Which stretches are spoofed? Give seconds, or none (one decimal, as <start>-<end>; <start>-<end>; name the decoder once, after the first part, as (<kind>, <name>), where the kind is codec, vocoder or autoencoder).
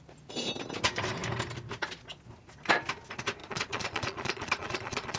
3.4-5.2 (vocoder, Vocos)